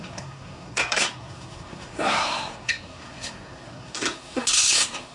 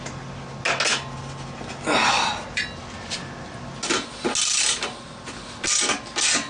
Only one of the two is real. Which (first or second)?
second